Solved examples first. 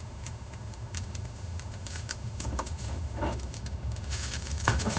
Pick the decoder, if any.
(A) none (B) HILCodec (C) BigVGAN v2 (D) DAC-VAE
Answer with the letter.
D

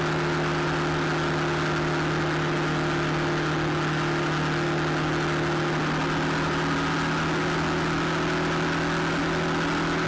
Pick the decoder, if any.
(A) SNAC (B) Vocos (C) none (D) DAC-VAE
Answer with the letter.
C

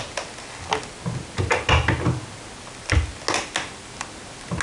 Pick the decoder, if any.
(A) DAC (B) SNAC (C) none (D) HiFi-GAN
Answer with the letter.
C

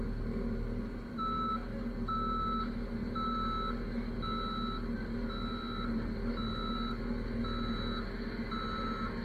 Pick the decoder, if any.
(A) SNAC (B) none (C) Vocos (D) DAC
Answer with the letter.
B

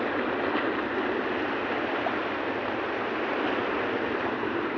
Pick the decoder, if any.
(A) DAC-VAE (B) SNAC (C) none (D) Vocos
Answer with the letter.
C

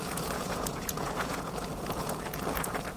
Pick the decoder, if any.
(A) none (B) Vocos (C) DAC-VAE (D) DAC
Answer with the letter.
B